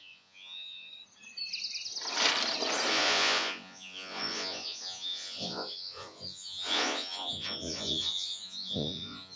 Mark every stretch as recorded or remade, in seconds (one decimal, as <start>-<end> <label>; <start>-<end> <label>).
0.0-0.9 remade; 0.9-2.9 recorded; 2.9-9.4 remade